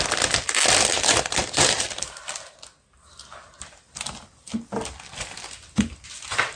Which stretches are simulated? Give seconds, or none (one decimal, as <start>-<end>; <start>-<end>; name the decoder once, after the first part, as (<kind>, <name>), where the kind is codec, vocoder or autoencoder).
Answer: none